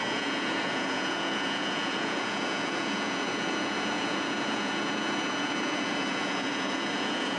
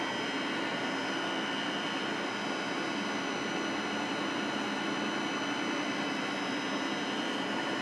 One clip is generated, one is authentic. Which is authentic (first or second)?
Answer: second